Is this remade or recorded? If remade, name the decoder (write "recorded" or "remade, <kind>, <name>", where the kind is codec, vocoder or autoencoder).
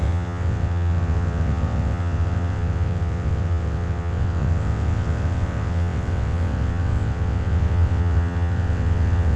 remade, vocoder, WaveNeXt